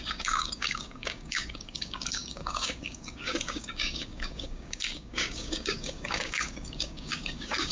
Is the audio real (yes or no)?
no